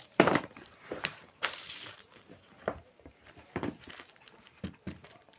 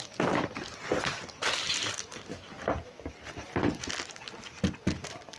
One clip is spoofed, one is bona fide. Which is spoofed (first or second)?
first